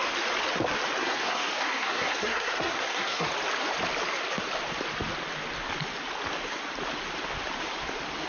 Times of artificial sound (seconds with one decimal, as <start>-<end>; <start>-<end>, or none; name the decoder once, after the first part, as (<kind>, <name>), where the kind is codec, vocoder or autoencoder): 1.0-3.3 (codec, SNAC)

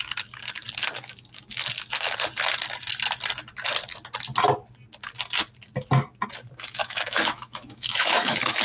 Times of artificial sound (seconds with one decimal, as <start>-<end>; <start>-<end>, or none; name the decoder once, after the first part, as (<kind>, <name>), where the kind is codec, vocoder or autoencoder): 6.8-8.6 (autoencoder, DAC-VAE)

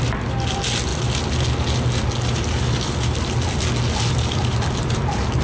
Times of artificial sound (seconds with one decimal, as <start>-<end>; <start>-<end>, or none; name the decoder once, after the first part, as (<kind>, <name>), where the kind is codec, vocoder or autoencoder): none

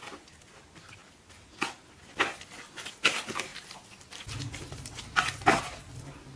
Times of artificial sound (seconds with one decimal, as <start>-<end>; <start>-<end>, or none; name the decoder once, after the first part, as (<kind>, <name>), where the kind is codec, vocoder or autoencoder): none

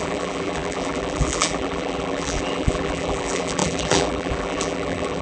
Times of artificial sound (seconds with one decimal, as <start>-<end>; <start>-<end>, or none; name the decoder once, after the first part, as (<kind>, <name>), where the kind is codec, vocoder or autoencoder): 0.0-5.2 (vocoder, BigVGAN v2)